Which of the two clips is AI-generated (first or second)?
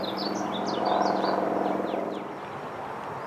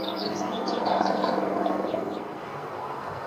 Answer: second